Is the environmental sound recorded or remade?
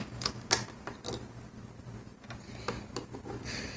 recorded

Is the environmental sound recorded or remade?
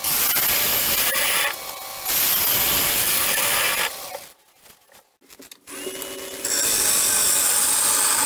recorded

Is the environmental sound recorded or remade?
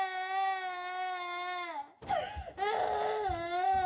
recorded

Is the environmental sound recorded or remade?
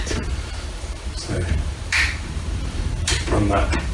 remade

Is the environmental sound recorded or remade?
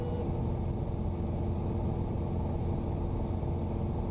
recorded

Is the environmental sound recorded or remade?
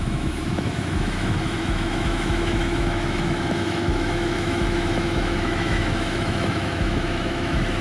remade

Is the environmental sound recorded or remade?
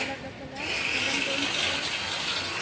recorded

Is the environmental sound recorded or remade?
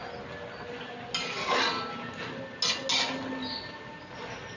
recorded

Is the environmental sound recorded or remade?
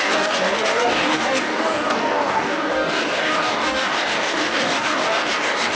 remade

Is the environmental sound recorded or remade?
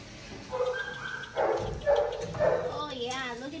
recorded